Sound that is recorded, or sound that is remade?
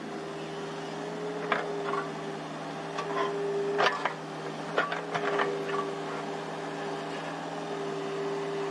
recorded